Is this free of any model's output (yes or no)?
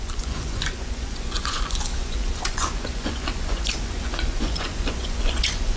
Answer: no